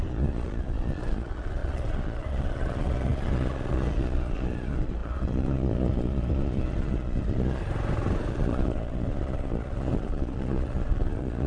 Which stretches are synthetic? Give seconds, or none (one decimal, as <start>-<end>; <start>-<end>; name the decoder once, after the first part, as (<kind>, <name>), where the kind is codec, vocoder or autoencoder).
0.0-7.6 (vocoder, Vocos); 8.3-11.5